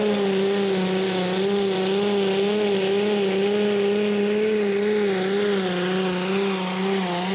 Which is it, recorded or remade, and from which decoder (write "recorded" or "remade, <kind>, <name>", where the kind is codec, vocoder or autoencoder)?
recorded